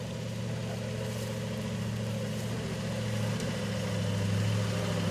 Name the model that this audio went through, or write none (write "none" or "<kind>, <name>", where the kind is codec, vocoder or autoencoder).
none